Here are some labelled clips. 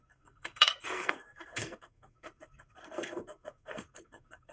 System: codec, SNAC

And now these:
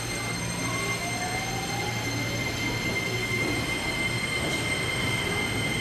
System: none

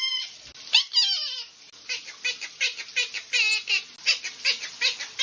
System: none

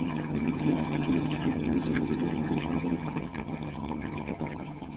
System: vocoder, HiFi-GAN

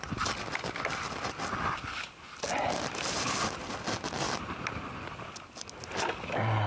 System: none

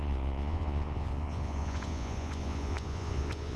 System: vocoder, Vocos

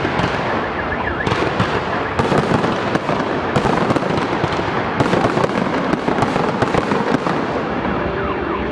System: none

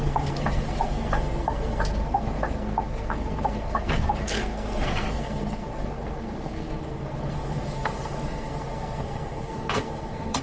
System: codec, SNAC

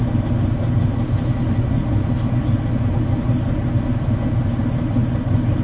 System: none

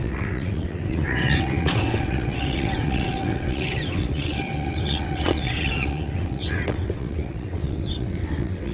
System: vocoder, WaveNeXt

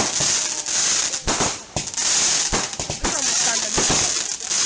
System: none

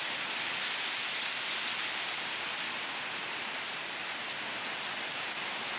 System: none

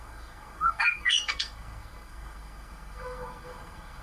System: codec, SNAC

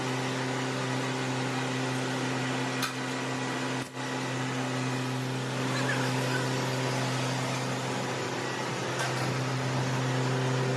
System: none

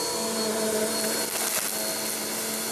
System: none